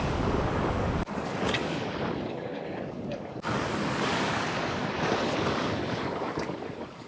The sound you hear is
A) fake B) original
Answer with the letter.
A